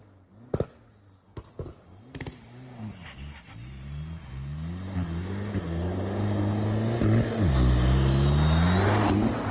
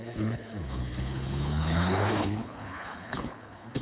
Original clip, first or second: first